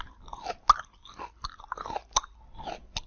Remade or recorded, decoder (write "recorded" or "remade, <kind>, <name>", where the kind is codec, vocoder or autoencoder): recorded